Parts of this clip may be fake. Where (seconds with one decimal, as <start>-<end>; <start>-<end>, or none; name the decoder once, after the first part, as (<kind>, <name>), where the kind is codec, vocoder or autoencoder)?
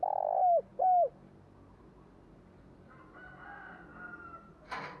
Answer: none